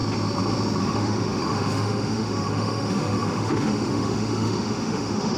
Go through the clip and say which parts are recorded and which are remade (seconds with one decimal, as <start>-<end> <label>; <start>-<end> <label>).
0.0-0.8 recorded; 0.8-5.4 remade